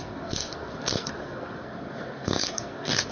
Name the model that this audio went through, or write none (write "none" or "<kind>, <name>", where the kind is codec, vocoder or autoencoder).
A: codec, SNAC